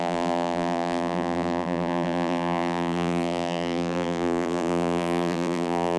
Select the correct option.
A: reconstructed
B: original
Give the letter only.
A